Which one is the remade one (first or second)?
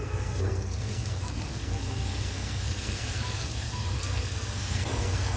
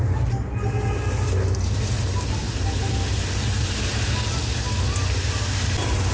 first